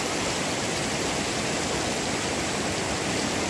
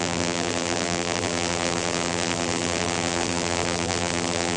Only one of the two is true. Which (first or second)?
first